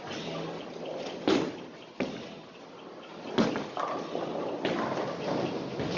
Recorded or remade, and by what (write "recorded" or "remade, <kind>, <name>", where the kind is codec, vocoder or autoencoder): recorded